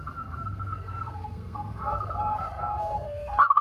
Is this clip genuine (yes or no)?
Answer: no